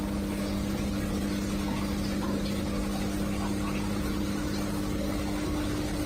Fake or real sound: real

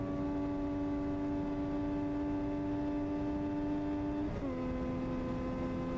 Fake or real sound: real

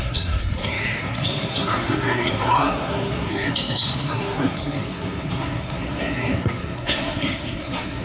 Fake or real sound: fake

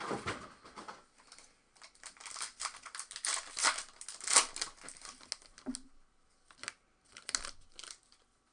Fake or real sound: real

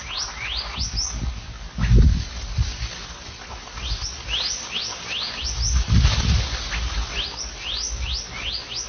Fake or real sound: real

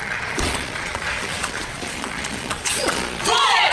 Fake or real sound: fake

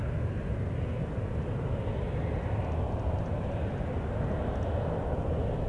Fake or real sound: real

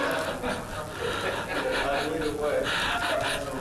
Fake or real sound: real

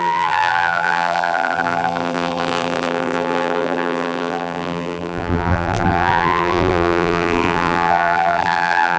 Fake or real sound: fake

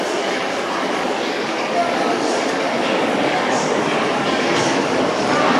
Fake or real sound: fake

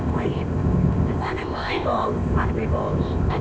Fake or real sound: fake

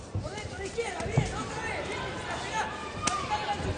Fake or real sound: real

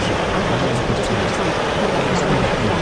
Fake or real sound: real